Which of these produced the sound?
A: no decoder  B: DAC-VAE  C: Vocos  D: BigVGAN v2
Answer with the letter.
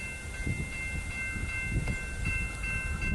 A